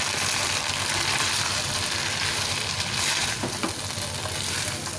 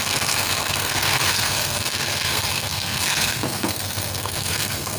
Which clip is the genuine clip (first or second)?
first